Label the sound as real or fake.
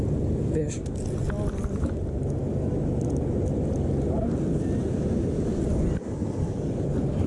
real